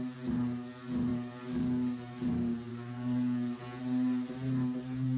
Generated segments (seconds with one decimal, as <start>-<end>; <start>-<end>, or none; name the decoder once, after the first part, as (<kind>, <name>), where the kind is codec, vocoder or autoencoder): 1.1-2.3 (codec, DAC); 2.7-3.6